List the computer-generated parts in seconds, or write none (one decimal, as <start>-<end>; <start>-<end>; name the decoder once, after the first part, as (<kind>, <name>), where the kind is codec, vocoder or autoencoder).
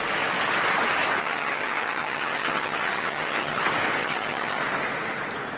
1.2-3.6 (vocoder, HiFi-GAN); 4.0-4.6